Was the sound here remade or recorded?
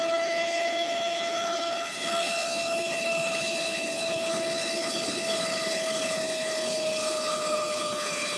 remade